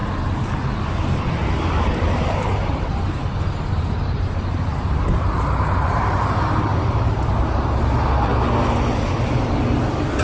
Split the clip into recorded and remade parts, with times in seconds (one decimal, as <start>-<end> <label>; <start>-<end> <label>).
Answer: 0.0-1.2 recorded; 1.2-3.2 remade; 3.2-3.7 recorded; 3.7-8.3 remade; 8.3-10.2 recorded